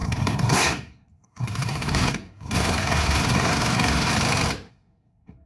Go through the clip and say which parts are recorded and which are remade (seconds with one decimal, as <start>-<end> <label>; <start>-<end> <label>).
0.0-4.1 remade; 4.1-4.7 recorded; 4.7-5.5 remade